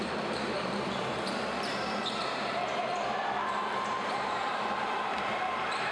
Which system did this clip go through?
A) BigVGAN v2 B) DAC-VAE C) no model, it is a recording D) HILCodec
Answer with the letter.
A